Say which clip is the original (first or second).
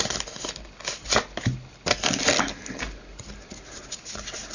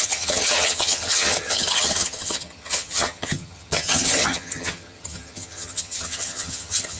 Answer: first